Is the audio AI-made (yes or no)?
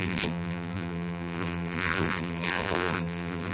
yes